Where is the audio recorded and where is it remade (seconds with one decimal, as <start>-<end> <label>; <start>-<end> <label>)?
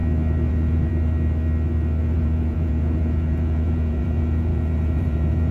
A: 0.0-0.5 recorded; 0.5-0.9 remade; 0.9-2.0 recorded; 2.0-5.5 remade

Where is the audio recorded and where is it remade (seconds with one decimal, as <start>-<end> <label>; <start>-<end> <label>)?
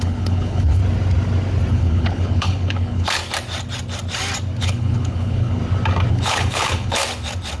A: 0.0-0.8 remade; 0.8-1.7 recorded; 1.7-3.2 remade; 3.2-4.6 recorded; 4.6-5.6 remade; 5.6-6.1 recorded; 6.1-7.0 remade; 7.0-7.6 recorded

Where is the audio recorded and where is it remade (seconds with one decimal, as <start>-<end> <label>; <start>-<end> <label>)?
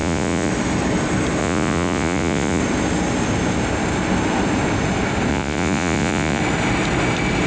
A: 0.0-0.5 remade; 0.5-1.4 recorded; 1.4-2.6 remade; 2.6-5.3 recorded; 5.3-6.4 remade; 6.4-7.5 recorded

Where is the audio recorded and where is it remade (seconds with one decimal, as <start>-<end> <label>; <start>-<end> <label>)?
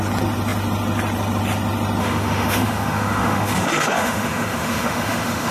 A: 0.0-2.0 recorded; 2.0-5.5 remade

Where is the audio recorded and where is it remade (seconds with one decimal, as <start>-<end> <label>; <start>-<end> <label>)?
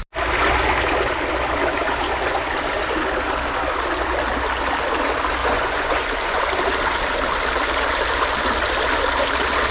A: 0.0-5.4 recorded; 5.4-6.4 remade; 6.4-9.7 recorded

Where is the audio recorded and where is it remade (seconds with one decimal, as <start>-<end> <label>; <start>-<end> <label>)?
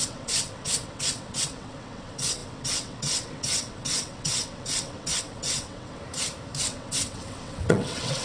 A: 0.0-6.0 remade; 6.0-6.6 recorded; 6.6-8.2 remade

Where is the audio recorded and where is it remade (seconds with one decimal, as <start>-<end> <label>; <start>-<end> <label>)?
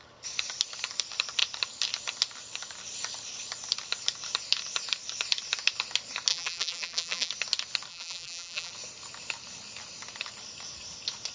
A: 0.0-6.3 recorded; 6.3-7.3 remade; 7.3-7.9 recorded; 7.9-8.7 remade; 8.7-11.3 recorded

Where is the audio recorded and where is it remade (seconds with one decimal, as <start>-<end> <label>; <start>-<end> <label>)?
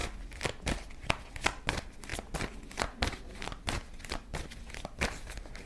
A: 0.0-5.7 recorded